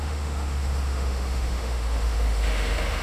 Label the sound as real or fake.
fake